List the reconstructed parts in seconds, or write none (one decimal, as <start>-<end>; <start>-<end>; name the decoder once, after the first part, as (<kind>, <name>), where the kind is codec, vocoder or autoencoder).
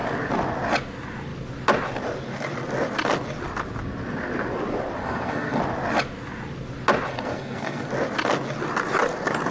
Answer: 5.0-5.6 (codec, SNAC); 7.1-7.9